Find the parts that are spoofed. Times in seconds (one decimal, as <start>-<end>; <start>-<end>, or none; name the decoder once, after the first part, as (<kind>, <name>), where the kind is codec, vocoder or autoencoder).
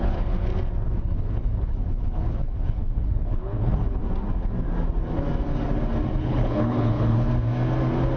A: 0.0-0.5 (codec, HILCodec); 1.0-4.0; 6.2-7.3